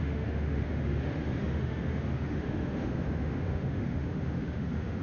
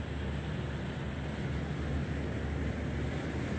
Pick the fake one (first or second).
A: first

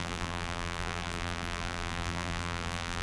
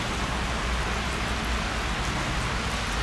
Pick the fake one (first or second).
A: first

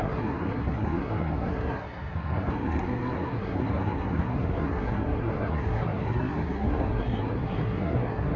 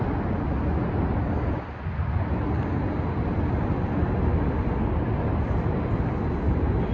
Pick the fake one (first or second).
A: first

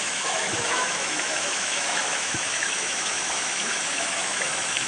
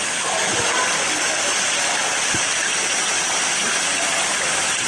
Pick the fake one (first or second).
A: first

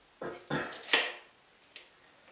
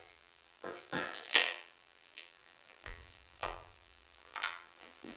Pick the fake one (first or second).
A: second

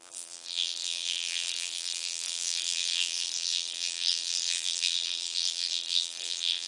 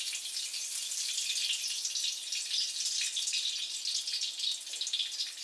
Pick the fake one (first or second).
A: first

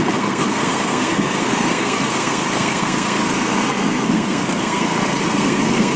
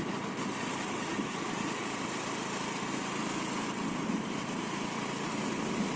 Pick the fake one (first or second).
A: first